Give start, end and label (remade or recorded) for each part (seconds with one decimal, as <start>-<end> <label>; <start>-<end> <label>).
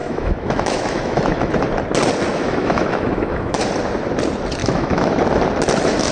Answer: 0.0-1.5 remade; 1.5-2.3 recorded; 2.3-3.7 remade; 3.7-4.6 recorded; 4.6-5.2 remade; 5.2-6.1 recorded